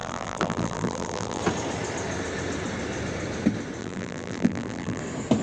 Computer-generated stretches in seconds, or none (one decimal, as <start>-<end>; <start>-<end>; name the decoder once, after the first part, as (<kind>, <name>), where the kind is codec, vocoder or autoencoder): 0.0-1.4 (vocoder, BigVGAN v2); 3.8-5.0